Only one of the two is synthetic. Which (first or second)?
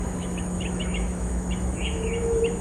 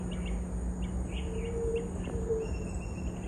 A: first